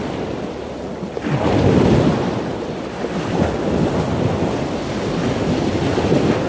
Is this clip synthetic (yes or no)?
no